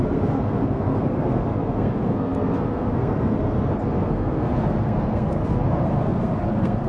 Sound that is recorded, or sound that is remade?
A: remade